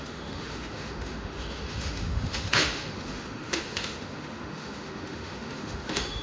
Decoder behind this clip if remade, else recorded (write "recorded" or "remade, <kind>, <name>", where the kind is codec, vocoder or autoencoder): remade, autoencoder, DAC-VAE